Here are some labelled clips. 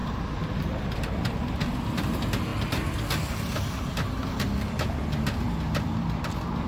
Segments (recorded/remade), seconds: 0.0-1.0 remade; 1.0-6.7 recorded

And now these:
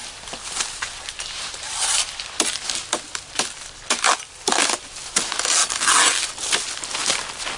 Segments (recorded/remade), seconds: 0.0-4.6 remade; 4.6-7.6 recorded

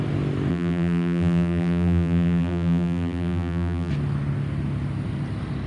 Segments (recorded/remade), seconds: 0.0-0.5 recorded; 0.5-3.9 remade; 3.9-5.7 recorded

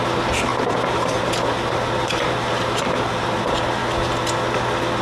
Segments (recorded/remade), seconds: 0.0-3.8 remade; 3.8-5.0 recorded

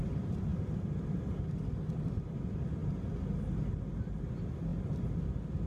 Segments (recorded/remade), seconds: 0.0-5.7 recorded

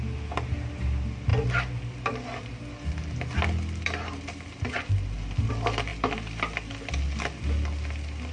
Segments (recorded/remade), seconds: 0.0-1.3 recorded; 1.3-5.5 remade; 5.5-5.9 recorded; 5.9-8.3 remade

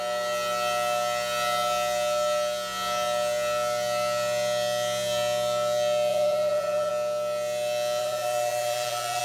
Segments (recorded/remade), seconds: 0.0-6.1 recorded; 6.1-6.9 remade; 6.9-8.0 recorded; 8.0-9.2 remade

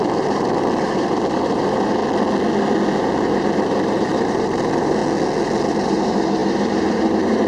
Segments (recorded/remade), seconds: 0.0-2.0 remade; 2.0-3.0 recorded; 3.0-5.0 remade; 5.0-5.7 recorded; 5.7-7.5 remade